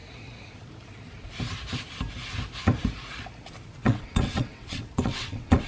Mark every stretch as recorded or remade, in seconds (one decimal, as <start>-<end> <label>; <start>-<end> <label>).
0.0-3.8 recorded; 3.8-5.7 remade